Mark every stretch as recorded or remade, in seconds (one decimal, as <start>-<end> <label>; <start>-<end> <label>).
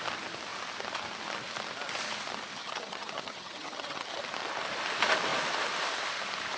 0.0-2.6 recorded; 2.6-4.2 remade; 4.2-6.6 recorded